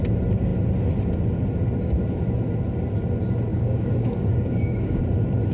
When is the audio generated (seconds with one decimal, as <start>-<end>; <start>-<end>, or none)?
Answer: 3.5-5.0